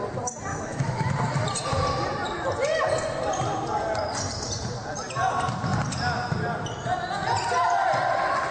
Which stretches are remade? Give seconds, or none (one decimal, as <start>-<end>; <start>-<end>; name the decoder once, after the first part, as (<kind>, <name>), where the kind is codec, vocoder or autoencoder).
0.5-1.1 (autoencoder, DAC-VAE)